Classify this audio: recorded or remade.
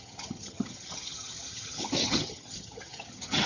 remade